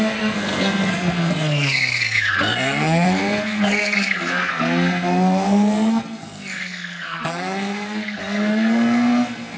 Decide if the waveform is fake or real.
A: fake